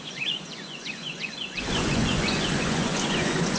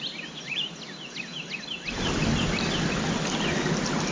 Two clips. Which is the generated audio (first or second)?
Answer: first